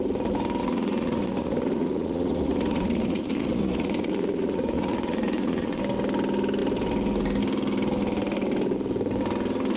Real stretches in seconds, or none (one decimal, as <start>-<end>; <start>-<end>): 0.0-0.6; 5.8-9.8